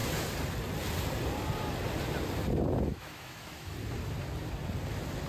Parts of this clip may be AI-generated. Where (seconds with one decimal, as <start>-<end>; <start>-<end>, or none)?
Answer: 2.9-3.7